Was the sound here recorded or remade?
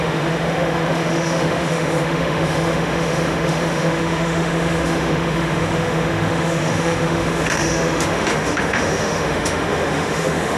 remade